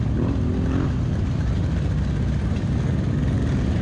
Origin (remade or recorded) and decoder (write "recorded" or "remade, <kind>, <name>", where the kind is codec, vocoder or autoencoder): recorded